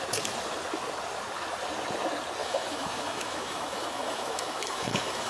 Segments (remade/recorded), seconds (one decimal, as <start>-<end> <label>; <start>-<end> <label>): 0.0-2.4 recorded; 2.4-5.3 remade